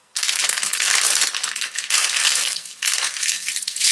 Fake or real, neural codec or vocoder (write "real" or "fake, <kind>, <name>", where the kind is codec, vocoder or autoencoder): fake, codec, SNAC